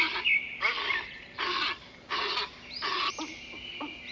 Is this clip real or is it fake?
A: real